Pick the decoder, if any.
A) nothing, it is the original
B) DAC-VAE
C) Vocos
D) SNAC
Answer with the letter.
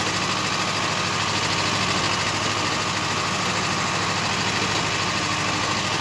A